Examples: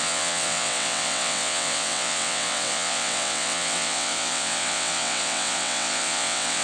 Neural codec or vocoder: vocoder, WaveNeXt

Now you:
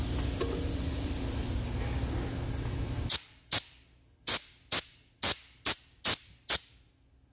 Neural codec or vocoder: none